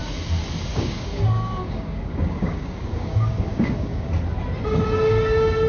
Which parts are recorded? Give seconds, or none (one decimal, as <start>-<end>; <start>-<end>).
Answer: 0.0-0.7; 4.1-5.7